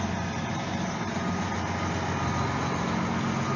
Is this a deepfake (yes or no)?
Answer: no